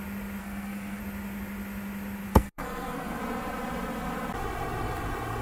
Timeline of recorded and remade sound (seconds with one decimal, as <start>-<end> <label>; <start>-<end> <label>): 0.0-0.4 recorded; 0.4-1.0 remade; 1.0-2.3 recorded; 2.3-3.2 remade; 3.2-5.4 recorded